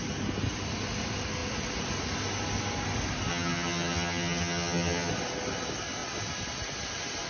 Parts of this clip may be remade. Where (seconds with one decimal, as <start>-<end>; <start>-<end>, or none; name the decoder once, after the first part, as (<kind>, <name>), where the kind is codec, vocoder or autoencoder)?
3.3-5.1 (vocoder, HiFi-GAN)